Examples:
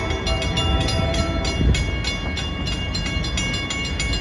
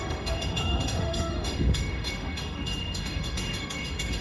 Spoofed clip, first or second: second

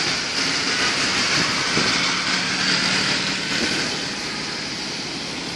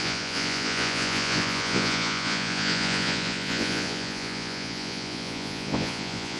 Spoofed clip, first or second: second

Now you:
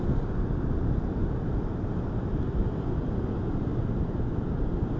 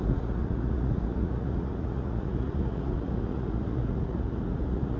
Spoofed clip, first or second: second